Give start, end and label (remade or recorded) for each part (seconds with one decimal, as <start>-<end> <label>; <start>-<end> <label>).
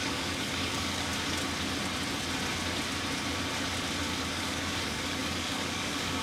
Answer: 0.0-1.1 remade; 1.1-4.3 recorded; 4.3-6.2 remade